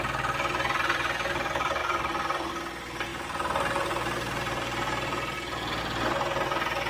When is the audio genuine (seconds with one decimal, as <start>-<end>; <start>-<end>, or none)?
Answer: 0.0-1.8; 2.5-3.1; 5.8-6.9